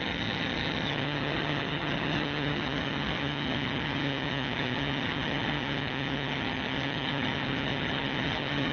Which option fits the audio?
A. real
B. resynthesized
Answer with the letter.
B